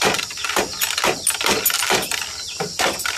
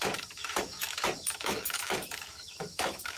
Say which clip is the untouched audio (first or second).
first